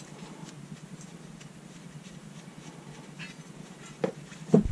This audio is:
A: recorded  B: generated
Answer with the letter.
A